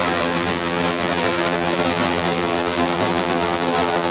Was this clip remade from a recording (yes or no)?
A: yes